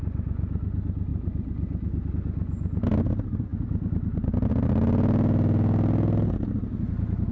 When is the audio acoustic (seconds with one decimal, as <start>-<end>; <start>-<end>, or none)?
0.0-1.1; 2.1-3.5; 4.5-7.3